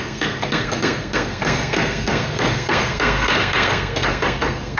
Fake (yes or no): yes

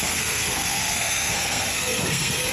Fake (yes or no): yes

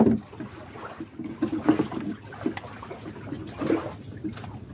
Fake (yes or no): no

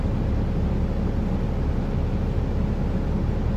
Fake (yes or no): no